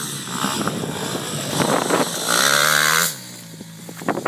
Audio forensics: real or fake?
real